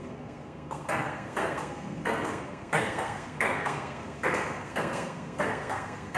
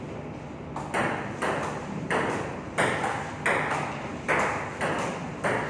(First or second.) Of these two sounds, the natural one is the second